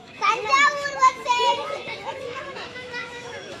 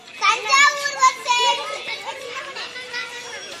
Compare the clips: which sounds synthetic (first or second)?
first